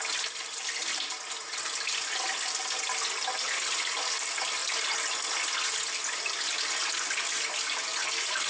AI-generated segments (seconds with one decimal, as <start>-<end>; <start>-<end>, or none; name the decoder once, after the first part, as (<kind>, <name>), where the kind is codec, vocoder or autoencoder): none